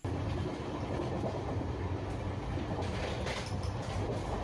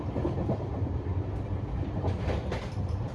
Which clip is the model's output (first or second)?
second